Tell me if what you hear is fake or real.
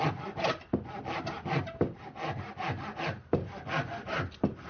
real